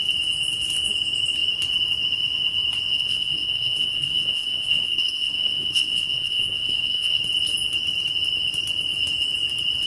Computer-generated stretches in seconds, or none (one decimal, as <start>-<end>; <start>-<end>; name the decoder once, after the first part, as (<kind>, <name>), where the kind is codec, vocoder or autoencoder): 2.9-7.2 (codec, SNAC)